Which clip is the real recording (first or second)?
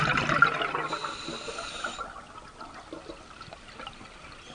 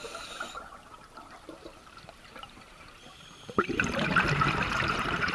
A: first